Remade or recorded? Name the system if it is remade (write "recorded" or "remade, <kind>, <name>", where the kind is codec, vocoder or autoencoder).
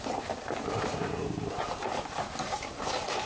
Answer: remade, vocoder, BigVGAN v2